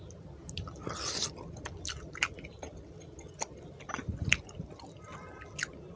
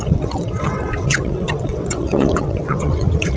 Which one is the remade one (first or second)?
second